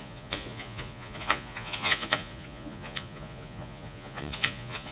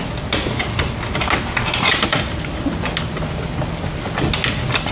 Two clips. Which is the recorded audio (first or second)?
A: second